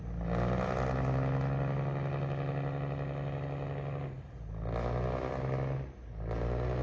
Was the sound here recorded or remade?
recorded